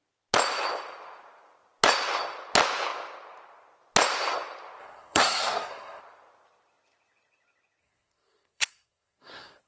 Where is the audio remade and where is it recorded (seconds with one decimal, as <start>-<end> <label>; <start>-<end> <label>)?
0.0-4.8 recorded; 4.8-6.0 remade; 6.0-7.8 recorded; 7.8-9.7 remade

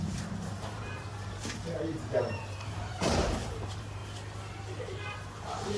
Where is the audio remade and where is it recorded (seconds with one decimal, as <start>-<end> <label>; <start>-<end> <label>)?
0.0-4.0 remade; 4.0-4.8 recorded; 4.8-5.8 remade

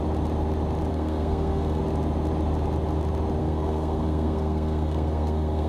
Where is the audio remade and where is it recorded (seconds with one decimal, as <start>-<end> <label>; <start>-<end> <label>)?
0.0-0.9 recorded; 0.9-1.8 remade; 1.8-3.4 recorded; 3.4-5.7 remade

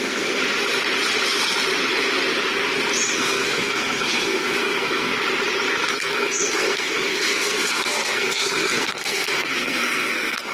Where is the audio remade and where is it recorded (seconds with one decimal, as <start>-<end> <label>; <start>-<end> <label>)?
0.0-0.4 remade; 0.4-3.1 recorded; 3.1-5.1 remade; 5.1-5.9 recorded; 5.9-10.5 remade